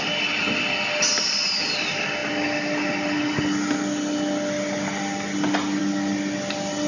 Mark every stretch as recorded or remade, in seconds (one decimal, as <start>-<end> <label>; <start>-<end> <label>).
0.0-6.9 recorded